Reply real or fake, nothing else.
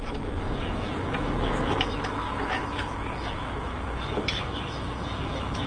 fake